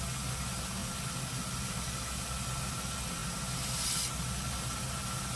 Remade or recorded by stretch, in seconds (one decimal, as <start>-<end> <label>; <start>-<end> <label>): 0.0-5.4 recorded